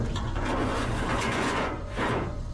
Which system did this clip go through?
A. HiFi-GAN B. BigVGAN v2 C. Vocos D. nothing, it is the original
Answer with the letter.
C